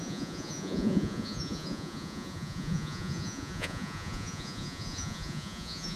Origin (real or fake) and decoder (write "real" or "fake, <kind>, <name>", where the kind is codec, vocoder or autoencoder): fake, vocoder, Vocos